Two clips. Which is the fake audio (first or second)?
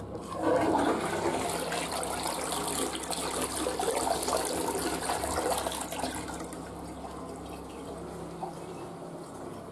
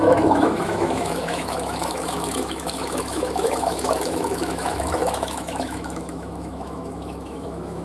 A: second